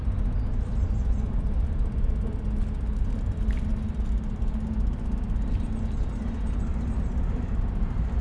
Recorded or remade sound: recorded